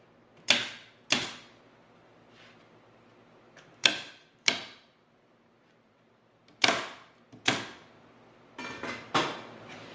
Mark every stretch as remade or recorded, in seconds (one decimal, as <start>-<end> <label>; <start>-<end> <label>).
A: 0.0-3.8 recorded; 3.8-6.4 remade; 6.4-9.9 recorded